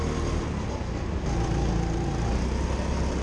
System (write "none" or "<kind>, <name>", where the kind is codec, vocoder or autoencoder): none